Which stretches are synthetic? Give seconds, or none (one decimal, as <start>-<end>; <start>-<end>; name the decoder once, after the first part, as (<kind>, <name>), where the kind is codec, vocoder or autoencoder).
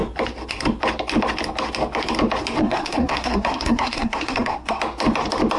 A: 2.6-4.8 (codec, SNAC)